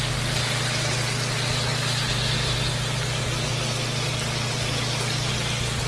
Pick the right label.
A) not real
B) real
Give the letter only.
B